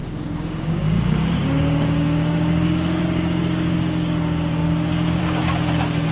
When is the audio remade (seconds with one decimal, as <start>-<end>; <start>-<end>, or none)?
0.0-6.1